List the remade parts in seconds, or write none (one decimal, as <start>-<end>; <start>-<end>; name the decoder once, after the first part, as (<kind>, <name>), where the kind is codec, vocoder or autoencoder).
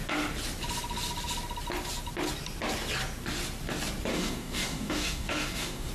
4.1-5.9 (codec, DAC)